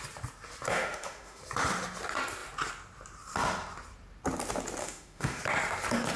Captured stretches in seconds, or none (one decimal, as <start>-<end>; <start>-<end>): 0.0-0.7; 1.4-4.8; 5.4-6.2